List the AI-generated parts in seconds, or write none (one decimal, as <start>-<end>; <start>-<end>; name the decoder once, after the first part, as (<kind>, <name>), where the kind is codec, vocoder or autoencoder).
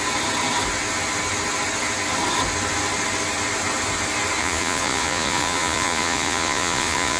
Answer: 4.4-7.2 (vocoder, Vocos)